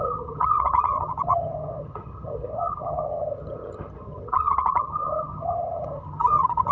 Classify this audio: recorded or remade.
remade